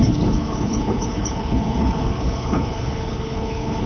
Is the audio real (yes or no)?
no